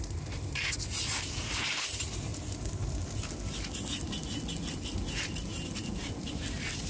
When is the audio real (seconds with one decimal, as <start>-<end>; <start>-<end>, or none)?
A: 0.0-3.9